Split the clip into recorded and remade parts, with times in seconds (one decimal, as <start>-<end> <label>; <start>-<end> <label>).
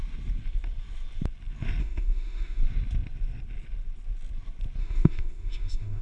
0.0-1.8 recorded; 1.8-2.6 remade; 2.6-4.8 recorded; 4.8-6.0 remade